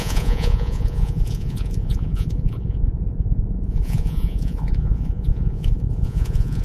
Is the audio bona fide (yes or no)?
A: no